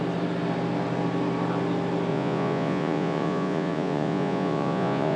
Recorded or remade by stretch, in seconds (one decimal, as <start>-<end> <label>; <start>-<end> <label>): 0.0-2.1 recorded; 2.1-5.2 remade